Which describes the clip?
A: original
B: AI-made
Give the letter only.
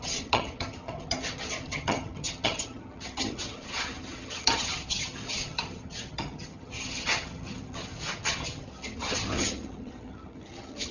B